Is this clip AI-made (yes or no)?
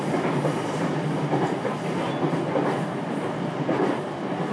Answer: no